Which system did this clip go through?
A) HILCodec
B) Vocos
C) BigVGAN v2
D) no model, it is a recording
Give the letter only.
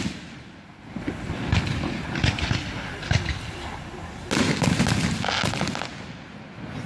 D